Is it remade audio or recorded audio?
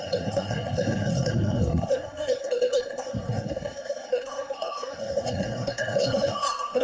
remade